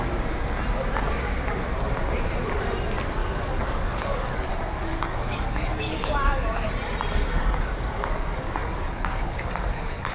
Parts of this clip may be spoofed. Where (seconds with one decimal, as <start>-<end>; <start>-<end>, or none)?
3.2-4.5; 4.9-6.7; 7.4-10.1